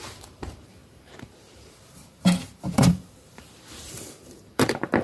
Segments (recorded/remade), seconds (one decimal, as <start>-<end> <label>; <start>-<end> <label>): 0.0-5.0 remade